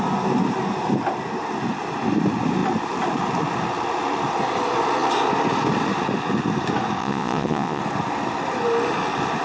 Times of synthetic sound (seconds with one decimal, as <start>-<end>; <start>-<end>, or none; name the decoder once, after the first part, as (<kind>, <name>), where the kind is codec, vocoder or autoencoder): 7.0-7.8 (vocoder, Vocos)